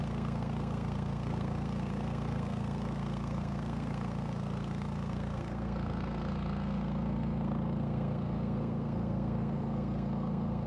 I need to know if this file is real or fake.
fake